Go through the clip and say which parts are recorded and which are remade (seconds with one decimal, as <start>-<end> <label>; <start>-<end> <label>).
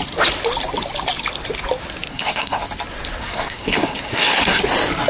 0.0-2.1 recorded; 2.1-2.6 remade; 2.6-3.2 recorded; 3.2-4.6 remade; 4.6-5.1 recorded